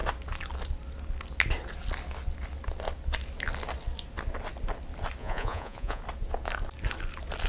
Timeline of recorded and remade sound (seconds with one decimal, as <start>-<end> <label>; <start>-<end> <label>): 0.0-5.2 recorded; 5.2-6.0 remade; 6.0-7.5 recorded